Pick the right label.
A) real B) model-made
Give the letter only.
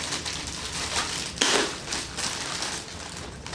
B